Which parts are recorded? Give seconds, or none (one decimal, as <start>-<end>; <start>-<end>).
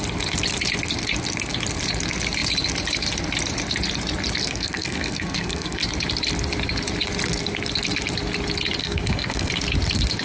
0.0-4.4; 5.8-8.8; 9.5-10.2